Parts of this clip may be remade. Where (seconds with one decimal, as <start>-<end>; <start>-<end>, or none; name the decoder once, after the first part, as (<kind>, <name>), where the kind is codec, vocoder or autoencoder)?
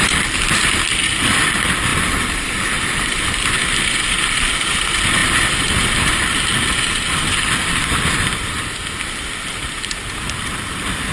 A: 1.9-4.4 (vocoder, BigVGAN v2)